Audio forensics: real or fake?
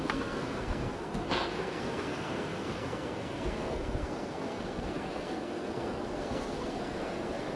fake